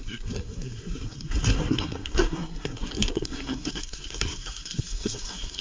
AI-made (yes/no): yes